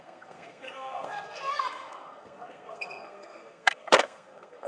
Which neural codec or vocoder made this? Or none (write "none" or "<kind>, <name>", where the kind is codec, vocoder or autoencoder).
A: codec, SNAC